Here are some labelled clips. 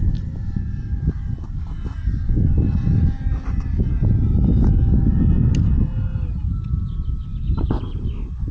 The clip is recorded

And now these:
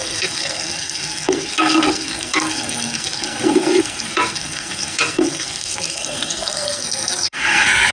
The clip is remade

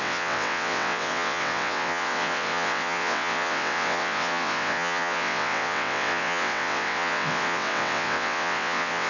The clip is remade